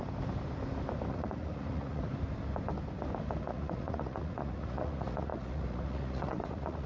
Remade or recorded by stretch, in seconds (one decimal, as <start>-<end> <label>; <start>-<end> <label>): 0.0-1.1 recorded; 1.1-2.1 remade; 2.1-3.4 recorded; 3.4-6.9 remade